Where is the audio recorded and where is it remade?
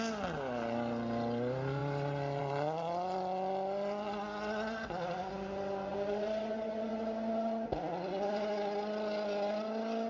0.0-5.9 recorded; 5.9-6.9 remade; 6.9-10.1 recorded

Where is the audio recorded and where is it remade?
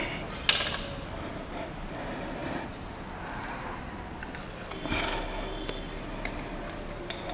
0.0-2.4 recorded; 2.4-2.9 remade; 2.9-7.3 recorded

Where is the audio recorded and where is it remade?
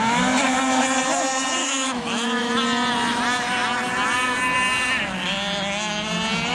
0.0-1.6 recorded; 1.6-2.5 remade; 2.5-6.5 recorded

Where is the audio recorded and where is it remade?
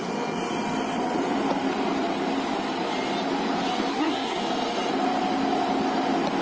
0.0-3.9 recorded; 3.9-4.4 remade; 4.4-6.4 recorded